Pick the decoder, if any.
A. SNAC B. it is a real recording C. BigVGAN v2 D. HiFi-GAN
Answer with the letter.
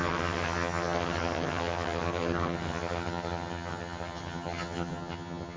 D